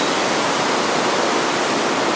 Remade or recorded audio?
recorded